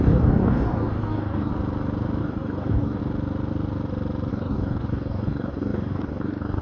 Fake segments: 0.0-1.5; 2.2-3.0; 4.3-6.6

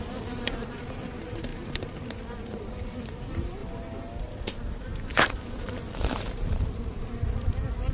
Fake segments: 0.0-3.6; 4.2-7.9